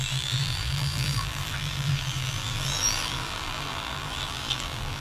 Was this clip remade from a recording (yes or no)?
yes